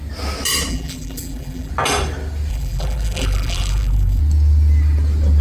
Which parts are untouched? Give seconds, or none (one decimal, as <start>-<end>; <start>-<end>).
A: 0.0-0.7; 1.7-2.5; 4.2-5.4